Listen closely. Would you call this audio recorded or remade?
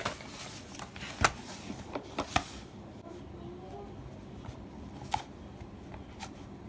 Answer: recorded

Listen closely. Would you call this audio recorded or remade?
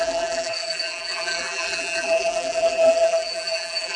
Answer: remade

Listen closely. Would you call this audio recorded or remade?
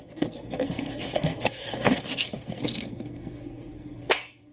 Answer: remade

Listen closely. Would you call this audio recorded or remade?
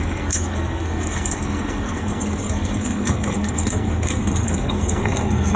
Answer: remade